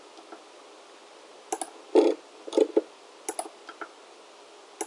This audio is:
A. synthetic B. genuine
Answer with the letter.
B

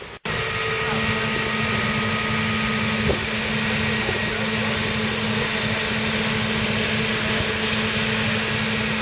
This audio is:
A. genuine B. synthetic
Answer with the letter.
A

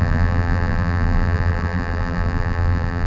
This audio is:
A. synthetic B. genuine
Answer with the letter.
A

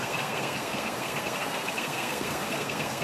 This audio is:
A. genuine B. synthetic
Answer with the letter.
B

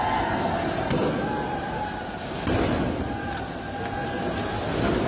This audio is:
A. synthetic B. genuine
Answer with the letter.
B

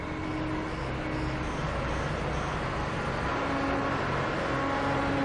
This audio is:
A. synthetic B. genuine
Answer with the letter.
B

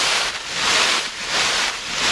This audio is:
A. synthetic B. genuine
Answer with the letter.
B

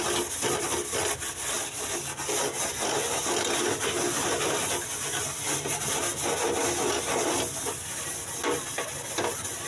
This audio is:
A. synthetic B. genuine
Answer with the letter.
B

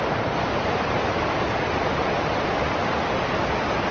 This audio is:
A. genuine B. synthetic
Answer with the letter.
A